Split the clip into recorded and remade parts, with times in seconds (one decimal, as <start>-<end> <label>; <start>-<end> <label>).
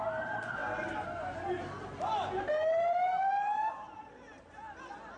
0.0-5.2 recorded